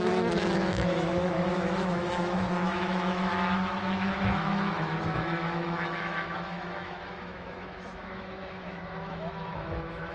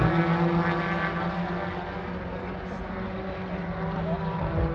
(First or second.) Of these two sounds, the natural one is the second